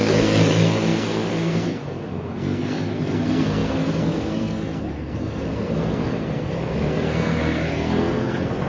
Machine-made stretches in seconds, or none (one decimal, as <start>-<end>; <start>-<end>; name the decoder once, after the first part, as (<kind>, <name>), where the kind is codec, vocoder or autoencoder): 0.0-8.7 (codec, SNAC)